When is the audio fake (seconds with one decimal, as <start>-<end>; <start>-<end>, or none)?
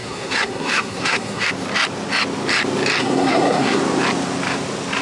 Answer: 0.0-1.5; 3.0-3.8